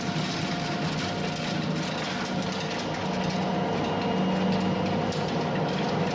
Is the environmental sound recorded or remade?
recorded